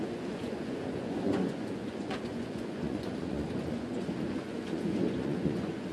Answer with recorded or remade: remade